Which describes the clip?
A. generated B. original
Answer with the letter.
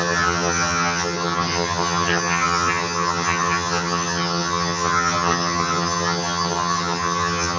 A